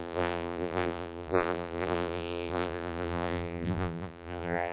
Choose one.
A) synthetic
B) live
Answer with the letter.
A